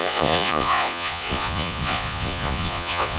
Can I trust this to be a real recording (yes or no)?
no